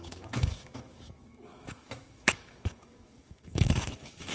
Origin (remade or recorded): remade